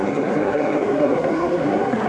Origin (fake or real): fake